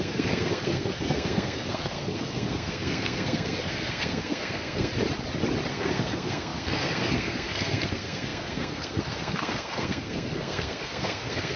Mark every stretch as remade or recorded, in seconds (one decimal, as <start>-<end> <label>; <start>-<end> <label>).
0.0-4.9 remade; 4.9-5.7 recorded; 5.7-11.6 remade